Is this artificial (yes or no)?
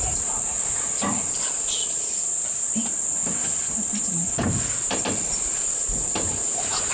yes